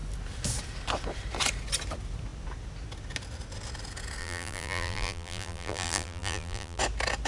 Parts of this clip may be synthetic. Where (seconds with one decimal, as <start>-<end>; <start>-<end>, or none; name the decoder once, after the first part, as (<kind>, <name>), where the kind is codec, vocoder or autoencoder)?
4.2-6.8 (vocoder, BigVGAN v2)